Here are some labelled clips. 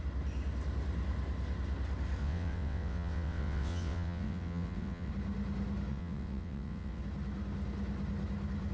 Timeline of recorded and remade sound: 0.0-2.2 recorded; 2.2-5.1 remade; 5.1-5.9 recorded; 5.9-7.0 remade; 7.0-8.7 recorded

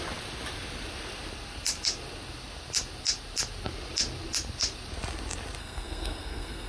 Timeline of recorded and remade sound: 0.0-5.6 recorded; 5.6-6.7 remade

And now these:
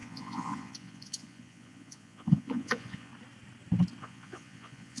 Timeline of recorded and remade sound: 0.0-3.1 remade; 3.1-4.0 recorded; 4.0-5.0 remade